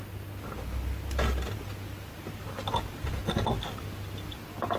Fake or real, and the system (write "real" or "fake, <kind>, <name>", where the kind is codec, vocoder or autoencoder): real